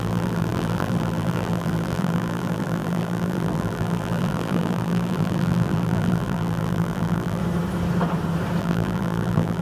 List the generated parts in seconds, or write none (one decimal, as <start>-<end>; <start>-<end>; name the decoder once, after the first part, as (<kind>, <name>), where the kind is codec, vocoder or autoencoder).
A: 0.0-7.4 (vocoder, BigVGAN v2); 8.6-9.6